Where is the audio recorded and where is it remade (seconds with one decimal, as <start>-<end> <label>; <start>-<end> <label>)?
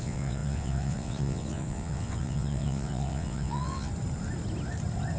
0.0-3.9 remade; 3.9-5.2 recorded